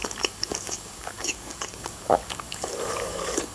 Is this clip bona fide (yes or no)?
no